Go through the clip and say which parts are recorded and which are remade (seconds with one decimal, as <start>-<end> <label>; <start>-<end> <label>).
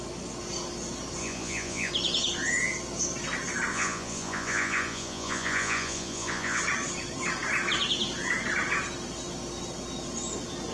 0.0-1.2 recorded; 1.2-1.9 remade; 1.9-3.7 recorded; 3.7-6.6 remade; 6.6-10.7 recorded